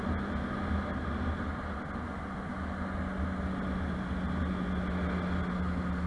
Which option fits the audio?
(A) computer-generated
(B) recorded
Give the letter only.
B